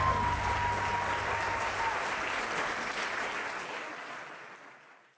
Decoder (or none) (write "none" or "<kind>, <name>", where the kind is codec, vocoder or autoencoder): none